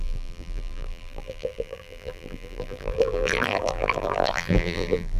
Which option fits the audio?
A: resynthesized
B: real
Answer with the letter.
A